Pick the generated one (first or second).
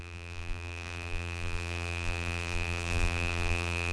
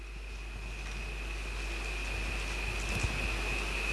first